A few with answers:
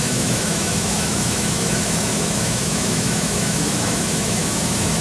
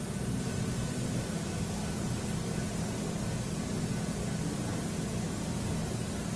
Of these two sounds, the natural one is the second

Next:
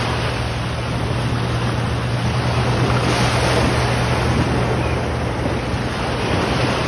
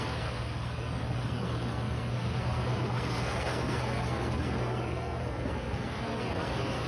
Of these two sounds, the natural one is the first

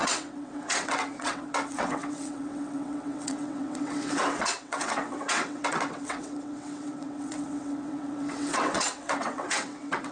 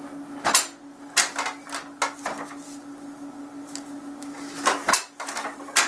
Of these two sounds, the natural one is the second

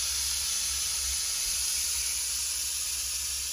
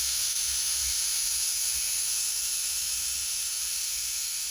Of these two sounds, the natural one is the first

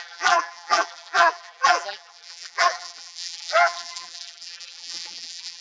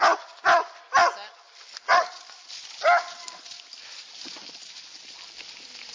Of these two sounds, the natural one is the second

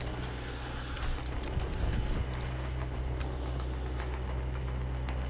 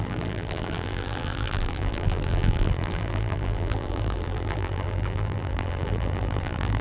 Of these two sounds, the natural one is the first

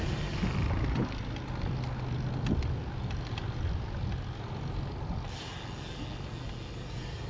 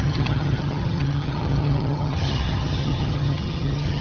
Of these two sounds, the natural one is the first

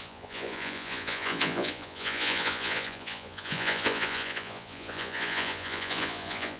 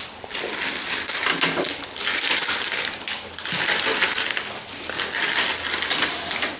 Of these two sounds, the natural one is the second